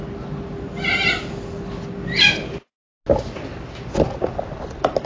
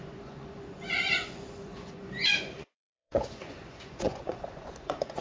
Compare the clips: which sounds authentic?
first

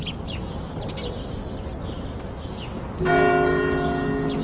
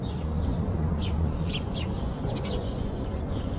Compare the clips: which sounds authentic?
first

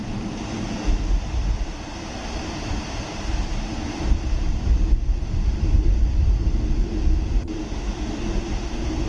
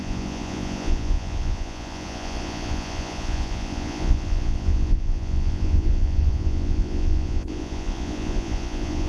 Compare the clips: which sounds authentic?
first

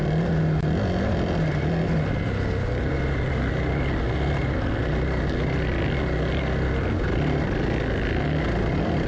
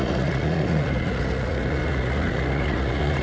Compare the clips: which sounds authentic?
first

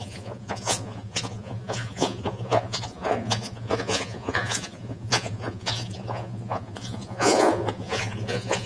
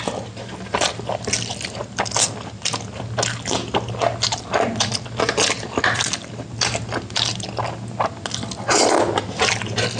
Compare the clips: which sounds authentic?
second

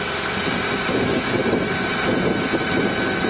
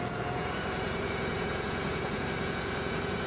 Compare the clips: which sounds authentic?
first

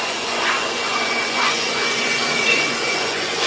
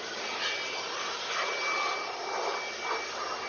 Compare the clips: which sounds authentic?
second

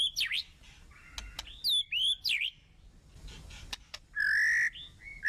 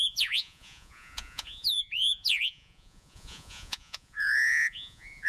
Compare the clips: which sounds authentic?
first